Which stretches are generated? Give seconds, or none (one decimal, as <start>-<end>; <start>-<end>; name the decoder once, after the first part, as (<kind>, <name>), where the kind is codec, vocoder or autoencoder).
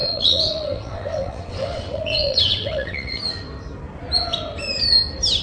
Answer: 0.0-3.2 (vocoder, WaveNeXt)